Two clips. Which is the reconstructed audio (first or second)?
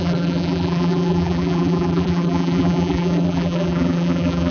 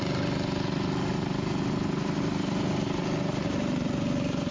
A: first